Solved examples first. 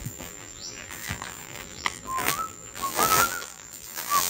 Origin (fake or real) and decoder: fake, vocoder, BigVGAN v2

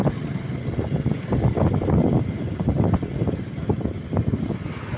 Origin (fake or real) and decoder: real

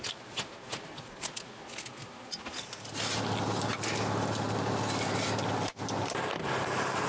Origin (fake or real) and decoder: real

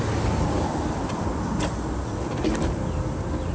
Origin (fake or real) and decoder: real